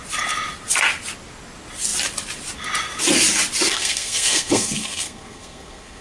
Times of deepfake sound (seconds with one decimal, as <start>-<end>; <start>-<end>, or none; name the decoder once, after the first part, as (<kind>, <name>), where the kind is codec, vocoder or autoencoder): 3.7-6.0 (codec, SNAC)